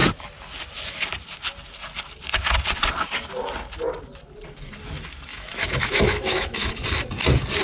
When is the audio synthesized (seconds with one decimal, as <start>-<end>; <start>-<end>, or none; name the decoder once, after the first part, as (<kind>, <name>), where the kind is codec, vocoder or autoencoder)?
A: 5.3-6.7 (autoencoder, DAC-VAE)